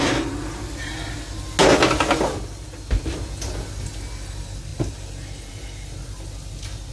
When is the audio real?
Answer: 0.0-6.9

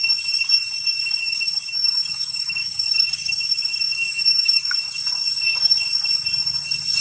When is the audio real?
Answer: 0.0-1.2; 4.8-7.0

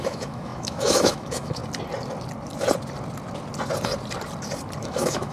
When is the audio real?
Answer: 1.6-4.8

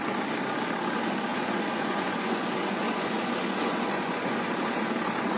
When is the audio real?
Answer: 0.0-1.3; 4.5-5.4

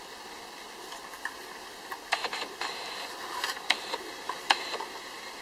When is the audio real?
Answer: 0.0-2.2

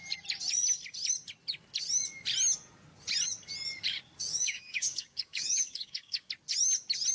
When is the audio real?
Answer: 0.0-4.3; 6.3-7.1

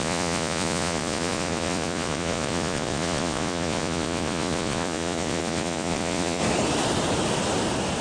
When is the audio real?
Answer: 6.4-8.0